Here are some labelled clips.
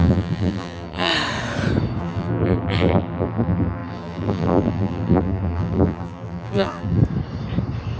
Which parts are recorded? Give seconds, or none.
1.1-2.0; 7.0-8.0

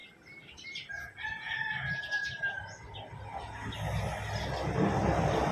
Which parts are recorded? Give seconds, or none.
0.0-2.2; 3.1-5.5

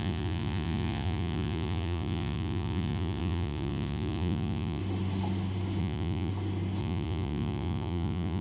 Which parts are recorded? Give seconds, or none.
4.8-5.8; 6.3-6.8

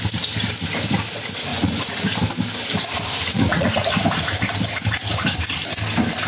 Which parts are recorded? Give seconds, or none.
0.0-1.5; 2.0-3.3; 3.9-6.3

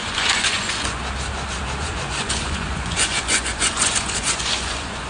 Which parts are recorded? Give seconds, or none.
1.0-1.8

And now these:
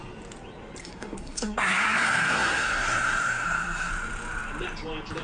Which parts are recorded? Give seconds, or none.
0.0-0.8; 3.9-5.2

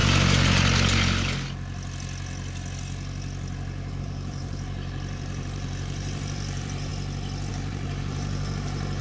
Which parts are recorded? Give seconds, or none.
0.0-4.0; 6.9-7.5